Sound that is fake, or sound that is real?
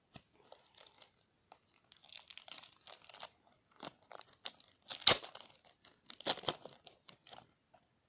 real